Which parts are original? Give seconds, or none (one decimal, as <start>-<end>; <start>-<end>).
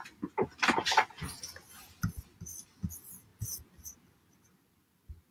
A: 0.0-5.3